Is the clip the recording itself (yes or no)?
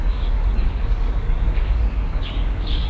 no